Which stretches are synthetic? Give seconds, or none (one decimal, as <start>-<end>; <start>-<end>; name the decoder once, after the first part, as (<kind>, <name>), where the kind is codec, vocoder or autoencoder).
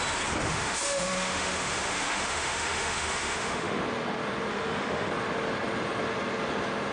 0.4-3.8 (autoencoder, DAC-VAE); 4.5-5.1